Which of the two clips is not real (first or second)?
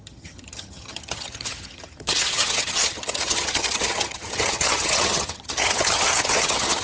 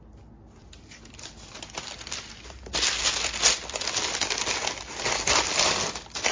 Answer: first